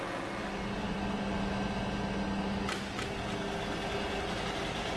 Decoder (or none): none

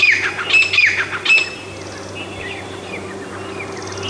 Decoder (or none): none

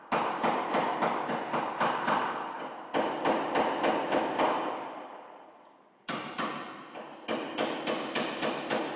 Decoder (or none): none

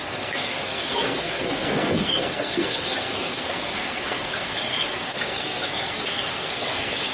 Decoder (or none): codec, SNAC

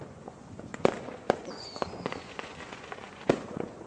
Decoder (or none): vocoder, Vocos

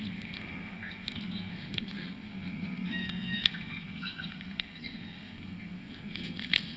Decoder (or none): codec, SNAC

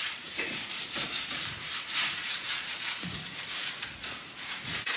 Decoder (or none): vocoder, Vocos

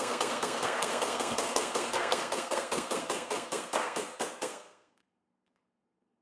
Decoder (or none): codec, SNAC